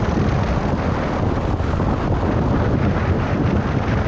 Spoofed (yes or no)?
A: no